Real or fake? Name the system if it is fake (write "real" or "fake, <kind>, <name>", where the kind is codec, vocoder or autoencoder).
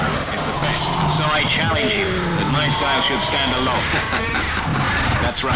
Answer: real